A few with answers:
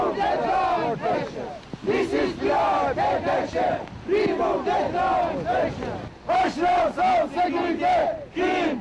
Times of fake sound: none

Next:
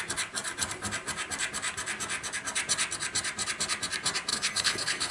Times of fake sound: 4.3-5.1 (codec, SNAC)

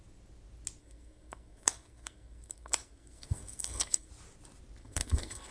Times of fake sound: 0.8-4.1 (codec, SNAC); 4.8-5.5

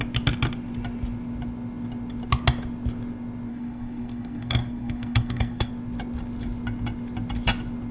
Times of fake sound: 3.5-5.7 (codec, SNAC)

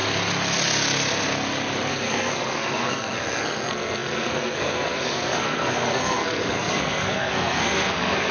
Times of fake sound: 1.9-8.3 (codec, SNAC)